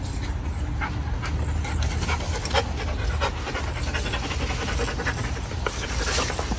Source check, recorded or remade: recorded